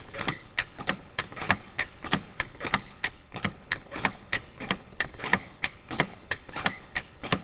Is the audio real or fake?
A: fake